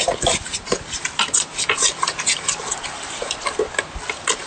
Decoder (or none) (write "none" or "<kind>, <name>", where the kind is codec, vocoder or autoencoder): none